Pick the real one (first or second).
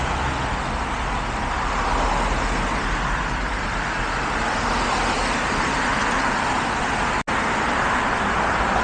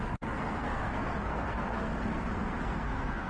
first